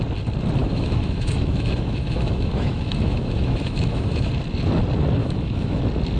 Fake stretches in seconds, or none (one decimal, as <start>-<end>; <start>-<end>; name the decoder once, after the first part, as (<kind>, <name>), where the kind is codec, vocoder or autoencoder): 0.6-4.3 (autoencoder, DAC-VAE); 5.2-5.8